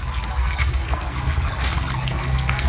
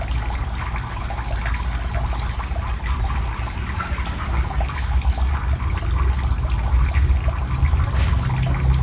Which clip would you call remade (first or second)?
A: first